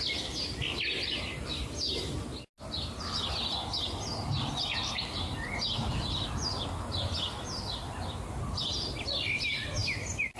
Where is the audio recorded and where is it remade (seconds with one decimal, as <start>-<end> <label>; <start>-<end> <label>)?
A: 0.0-10.4 recorded